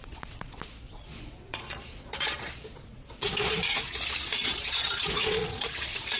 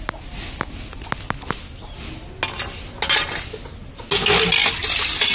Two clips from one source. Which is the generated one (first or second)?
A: first